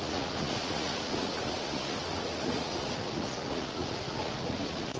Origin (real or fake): fake